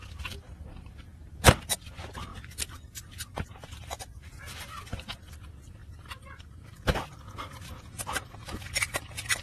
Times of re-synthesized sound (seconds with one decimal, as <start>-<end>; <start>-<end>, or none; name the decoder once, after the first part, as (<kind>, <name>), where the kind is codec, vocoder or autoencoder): 2.3-5.2 (vocoder, BigVGAN v2); 5.8-7.8